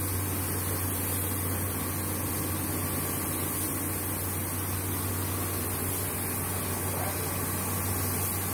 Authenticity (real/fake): real